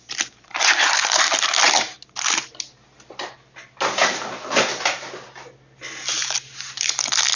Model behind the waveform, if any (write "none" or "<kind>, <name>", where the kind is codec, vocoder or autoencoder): none